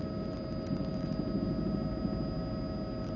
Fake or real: real